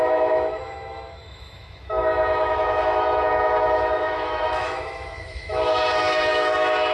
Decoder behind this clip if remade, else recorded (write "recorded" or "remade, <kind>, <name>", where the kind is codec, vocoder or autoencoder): remade, autoencoder, DAC-VAE